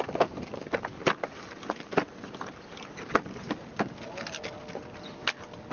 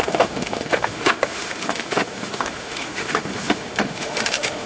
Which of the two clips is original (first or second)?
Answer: first